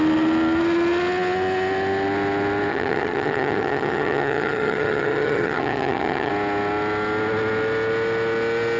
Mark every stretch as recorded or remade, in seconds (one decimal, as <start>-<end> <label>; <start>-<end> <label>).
0.0-2.7 recorded; 2.7-6.3 remade; 6.3-8.8 recorded